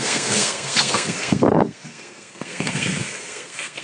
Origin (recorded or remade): remade